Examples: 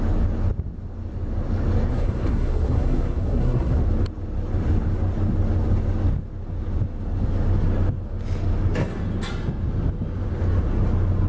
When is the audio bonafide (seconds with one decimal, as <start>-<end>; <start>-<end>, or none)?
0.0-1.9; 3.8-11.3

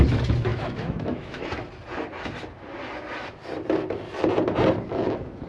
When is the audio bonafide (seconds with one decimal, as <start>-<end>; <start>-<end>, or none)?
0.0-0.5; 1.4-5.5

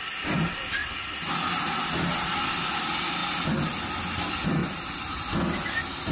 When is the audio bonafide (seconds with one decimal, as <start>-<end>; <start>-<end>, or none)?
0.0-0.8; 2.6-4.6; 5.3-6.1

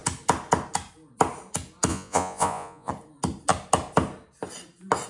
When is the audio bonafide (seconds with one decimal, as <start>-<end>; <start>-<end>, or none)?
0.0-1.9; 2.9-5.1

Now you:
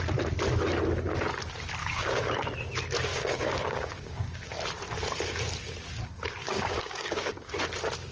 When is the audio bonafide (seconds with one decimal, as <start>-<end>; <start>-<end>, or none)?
0.0-1.8; 2.3-3.1; 4.5-6.4; 7.6-8.1